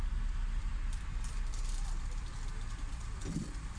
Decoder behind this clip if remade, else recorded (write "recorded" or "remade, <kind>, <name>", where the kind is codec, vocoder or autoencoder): remade, vocoder, BigVGAN v2